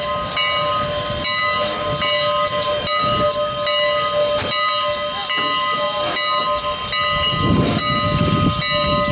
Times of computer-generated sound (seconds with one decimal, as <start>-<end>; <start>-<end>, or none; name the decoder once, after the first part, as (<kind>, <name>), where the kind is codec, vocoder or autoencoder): none